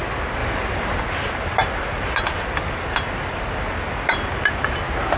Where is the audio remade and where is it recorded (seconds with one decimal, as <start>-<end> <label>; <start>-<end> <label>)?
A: 0.0-0.4 recorded; 0.4-1.0 remade; 1.0-1.6 recorded; 1.6-4.7 remade; 4.7-5.2 recorded